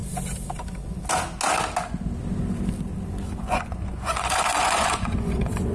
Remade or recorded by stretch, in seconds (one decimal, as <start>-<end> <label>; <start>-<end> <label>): 0.0-3.4 recorded; 3.4-5.7 remade